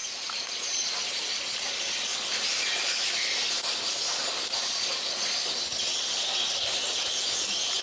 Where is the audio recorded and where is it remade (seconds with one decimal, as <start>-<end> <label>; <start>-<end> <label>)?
0.0-0.6 remade; 0.6-7.8 recorded